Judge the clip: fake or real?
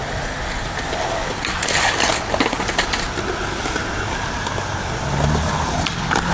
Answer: real